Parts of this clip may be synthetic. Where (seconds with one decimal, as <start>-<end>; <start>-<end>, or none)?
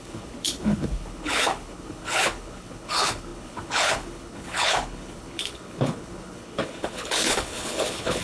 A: 0.0-8.2